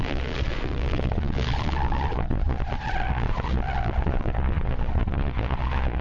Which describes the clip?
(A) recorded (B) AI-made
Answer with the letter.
B